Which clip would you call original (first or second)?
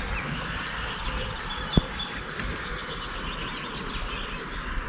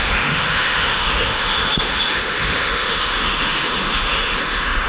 first